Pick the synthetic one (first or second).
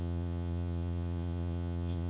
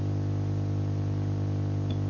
first